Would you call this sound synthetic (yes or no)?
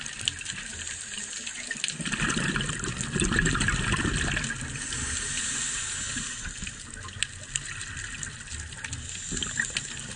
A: no